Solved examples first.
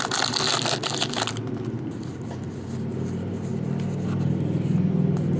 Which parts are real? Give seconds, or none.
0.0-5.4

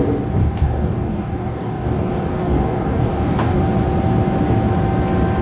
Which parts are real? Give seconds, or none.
0.0-0.4; 3.6-5.4

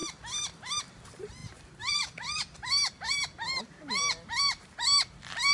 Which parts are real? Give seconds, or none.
none

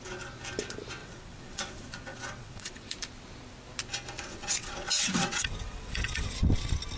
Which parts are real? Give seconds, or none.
0.0-1.0; 2.9-4.3; 6.4-7.0

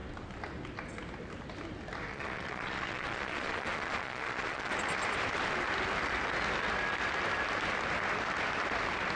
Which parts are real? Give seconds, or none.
0.0-2.1; 4.7-9.2

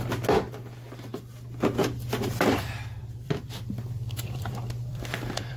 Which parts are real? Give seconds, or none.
0.0-3.0